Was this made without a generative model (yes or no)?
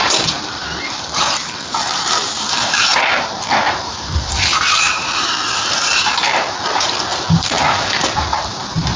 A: no